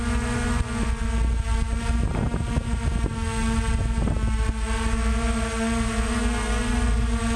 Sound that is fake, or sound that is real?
real